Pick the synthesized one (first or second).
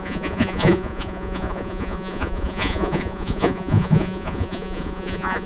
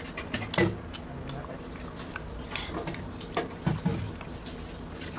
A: first